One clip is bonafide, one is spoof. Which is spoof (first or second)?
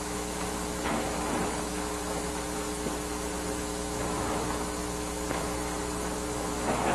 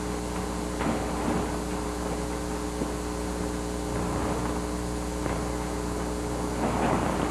first